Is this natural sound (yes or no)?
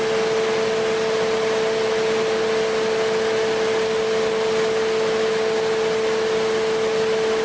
yes